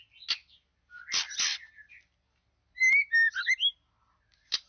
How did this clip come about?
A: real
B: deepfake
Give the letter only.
A